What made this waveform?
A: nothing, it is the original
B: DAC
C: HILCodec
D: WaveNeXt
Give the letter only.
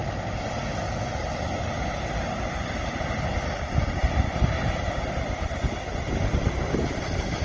A